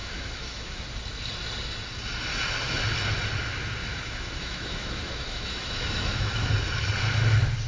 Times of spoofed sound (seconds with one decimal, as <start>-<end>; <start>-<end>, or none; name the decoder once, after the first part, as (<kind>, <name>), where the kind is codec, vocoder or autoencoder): 0.0-0.8 (autoencoder, DAC-VAE); 3.8-6.5